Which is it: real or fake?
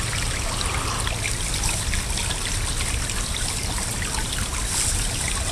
real